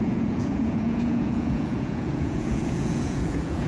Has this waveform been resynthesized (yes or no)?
yes